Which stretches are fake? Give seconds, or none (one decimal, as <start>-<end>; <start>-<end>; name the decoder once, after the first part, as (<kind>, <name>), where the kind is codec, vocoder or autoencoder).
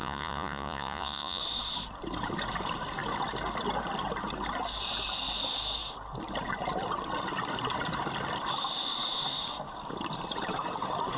0.0-1.4 (vocoder, Vocos)